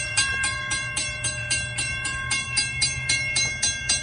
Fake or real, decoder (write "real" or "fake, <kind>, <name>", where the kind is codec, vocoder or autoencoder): fake, vocoder, BigVGAN v2